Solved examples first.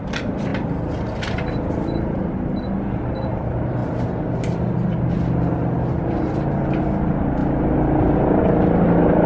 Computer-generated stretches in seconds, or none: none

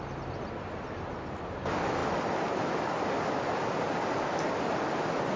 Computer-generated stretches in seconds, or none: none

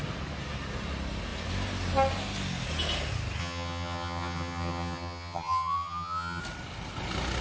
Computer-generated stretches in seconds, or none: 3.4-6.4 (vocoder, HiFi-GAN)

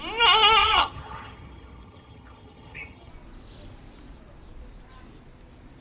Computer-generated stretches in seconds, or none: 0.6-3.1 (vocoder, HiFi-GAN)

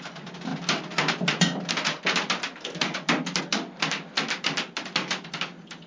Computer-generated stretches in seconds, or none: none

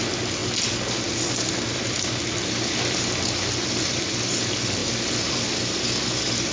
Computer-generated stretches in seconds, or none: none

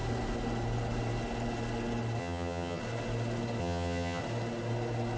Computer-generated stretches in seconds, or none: 2.2-2.8 (vocoder, HiFi-GAN); 3.6-4.2

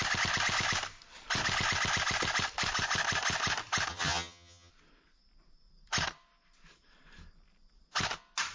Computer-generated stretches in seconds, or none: 3.9-4.7 (vocoder, HiFi-GAN)